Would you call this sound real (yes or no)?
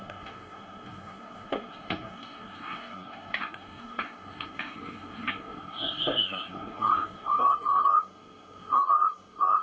no